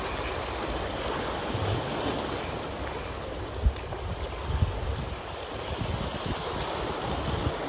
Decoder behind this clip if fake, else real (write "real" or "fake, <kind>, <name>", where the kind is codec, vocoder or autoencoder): real